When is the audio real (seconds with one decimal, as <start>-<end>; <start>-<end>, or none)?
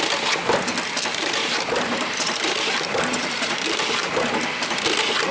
0.0-1.1; 4.3-5.3